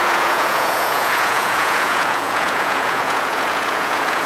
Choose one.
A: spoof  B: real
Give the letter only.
A